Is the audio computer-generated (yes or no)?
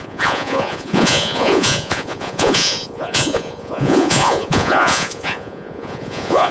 yes